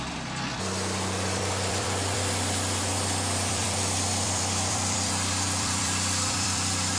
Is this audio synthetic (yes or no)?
yes